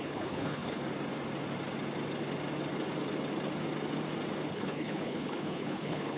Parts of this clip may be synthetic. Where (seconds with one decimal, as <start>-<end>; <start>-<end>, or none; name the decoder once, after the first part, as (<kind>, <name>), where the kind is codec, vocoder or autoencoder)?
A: 0.0-0.8 (codec, HILCodec); 4.5-6.2